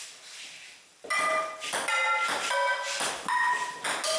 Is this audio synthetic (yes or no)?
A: no